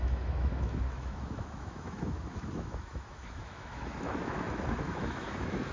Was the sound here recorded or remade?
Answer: remade